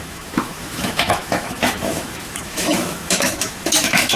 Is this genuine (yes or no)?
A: no